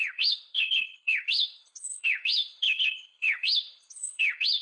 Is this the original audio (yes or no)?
no